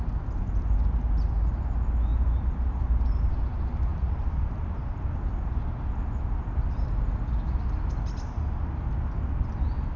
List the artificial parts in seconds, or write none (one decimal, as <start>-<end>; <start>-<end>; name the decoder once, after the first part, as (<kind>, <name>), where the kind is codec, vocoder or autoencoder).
2.1-3.4 (vocoder, BigVGAN v2)